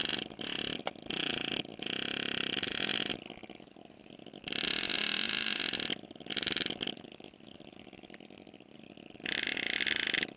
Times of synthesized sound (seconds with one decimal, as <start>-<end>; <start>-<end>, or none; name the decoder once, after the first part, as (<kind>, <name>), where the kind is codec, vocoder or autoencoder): none